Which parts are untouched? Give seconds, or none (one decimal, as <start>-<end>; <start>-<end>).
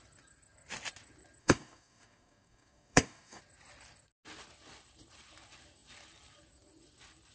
0.0-1.4; 3.4-7.3